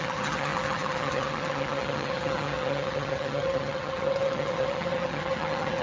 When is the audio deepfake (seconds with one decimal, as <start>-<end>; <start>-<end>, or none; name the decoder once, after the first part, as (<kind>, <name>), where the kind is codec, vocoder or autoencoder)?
0.0-5.8 (vocoder, HiFi-GAN)